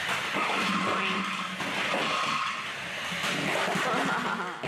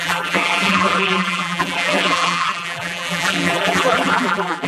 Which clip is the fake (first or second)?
second